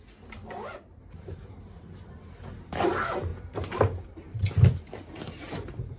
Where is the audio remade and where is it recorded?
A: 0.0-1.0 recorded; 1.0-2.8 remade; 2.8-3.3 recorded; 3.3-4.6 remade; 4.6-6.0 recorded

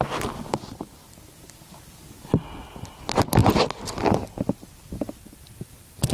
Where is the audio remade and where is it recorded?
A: 0.0-6.1 recorded

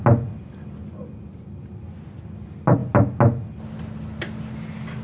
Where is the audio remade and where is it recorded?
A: 0.0-5.0 recorded

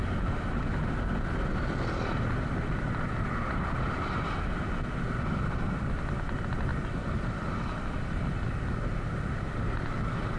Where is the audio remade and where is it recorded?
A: 0.0-10.4 recorded

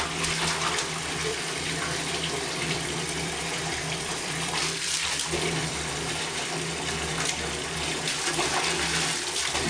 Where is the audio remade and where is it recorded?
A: 0.0-1.3 recorded; 1.3-6.2 remade; 6.2-9.7 recorded

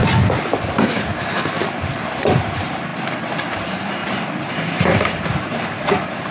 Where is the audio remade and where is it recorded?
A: 0.0-0.6 recorded; 0.6-2.9 remade; 2.9-3.5 recorded; 3.5-4.0 remade; 4.0-4.5 recorded; 4.5-6.3 remade

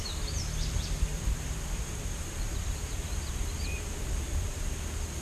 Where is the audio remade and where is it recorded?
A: 0.0-1.1 recorded; 1.1-4.2 remade; 4.2-5.2 recorded

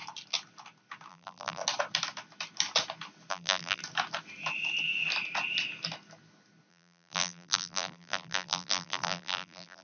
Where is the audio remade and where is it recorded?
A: 0.0-1.1 recorded; 1.1-1.6 remade; 1.6-3.3 recorded; 3.3-3.8 remade; 3.8-6.7 recorded; 6.7-9.8 remade